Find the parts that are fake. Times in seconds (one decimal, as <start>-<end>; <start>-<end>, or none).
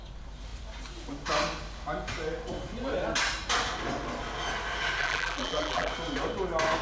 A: 5.0-5.9